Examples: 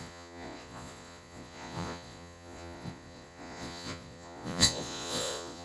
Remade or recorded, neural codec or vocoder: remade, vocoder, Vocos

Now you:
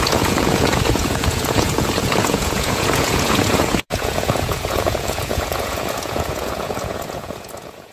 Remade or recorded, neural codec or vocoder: remade, vocoder, Vocos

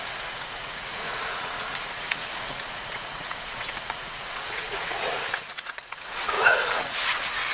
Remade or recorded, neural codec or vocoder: remade, vocoder, Vocos